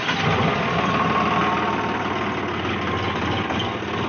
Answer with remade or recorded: recorded